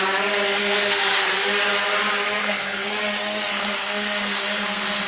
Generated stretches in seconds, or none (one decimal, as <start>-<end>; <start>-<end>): 0.6-1.3; 2.4-2.9; 3.5-5.1

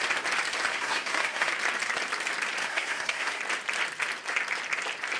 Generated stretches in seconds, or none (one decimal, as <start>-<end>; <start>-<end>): 0.7-1.5; 2.6-3.4